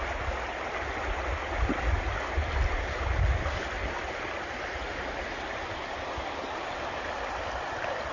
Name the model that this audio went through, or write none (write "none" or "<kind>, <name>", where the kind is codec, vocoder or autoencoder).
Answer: none